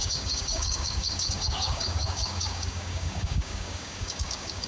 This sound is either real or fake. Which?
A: fake